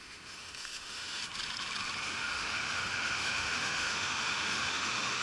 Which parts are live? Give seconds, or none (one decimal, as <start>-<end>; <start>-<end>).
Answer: 1.2-2.0